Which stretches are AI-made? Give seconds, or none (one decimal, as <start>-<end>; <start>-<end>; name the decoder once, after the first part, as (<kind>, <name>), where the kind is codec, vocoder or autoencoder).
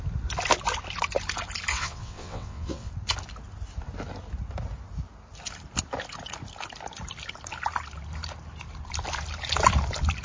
1.7-2.9 (vocoder, WaveNeXt)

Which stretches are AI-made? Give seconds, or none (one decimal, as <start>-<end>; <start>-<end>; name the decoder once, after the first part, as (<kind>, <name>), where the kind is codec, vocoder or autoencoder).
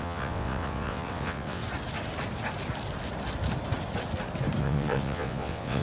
0.0-1.6 (vocoder, WaveNeXt); 4.6-5.8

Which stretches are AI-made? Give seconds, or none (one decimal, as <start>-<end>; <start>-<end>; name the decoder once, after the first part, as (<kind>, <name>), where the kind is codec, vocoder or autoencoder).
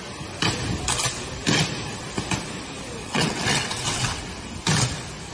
3.0-4.2 (vocoder, WaveNeXt)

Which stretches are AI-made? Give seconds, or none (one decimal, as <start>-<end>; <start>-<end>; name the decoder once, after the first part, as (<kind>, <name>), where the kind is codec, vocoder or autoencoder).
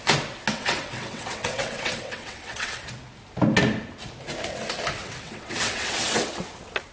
0.5-2.8 (vocoder, WaveNeXt); 5.0-6.3